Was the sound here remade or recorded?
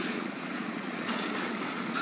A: remade